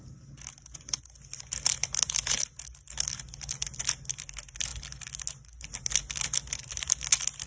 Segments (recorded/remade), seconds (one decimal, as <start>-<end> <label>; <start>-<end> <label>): 0.0-7.5 recorded